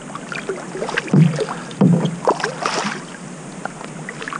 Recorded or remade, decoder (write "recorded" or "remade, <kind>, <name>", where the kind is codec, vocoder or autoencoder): recorded